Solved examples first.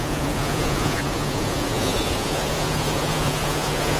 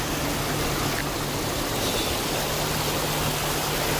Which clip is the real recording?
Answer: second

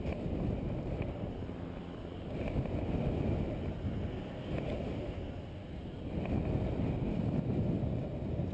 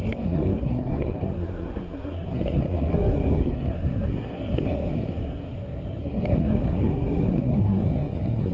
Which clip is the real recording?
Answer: first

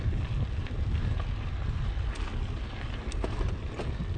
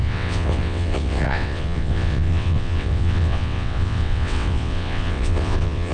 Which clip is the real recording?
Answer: first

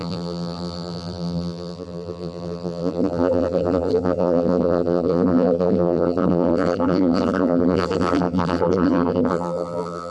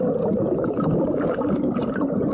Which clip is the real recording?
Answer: second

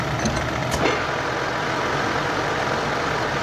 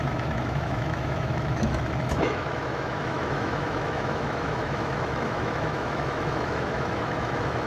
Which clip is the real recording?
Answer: first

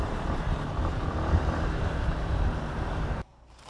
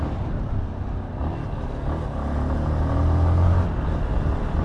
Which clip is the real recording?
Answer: second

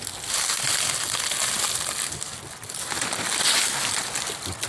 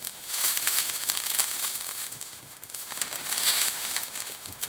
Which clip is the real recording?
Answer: first